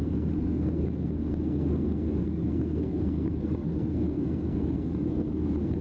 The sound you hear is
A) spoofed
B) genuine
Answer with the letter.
A